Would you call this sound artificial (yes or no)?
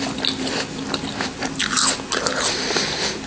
no